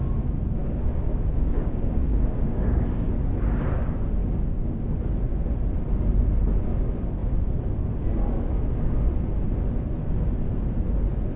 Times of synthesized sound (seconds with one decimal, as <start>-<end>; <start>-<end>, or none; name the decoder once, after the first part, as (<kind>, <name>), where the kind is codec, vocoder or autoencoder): 0.6-3.1 (codec, DAC); 4.2-4.8